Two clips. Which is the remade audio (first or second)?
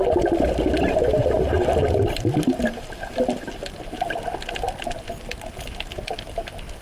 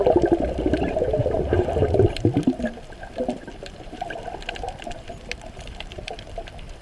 second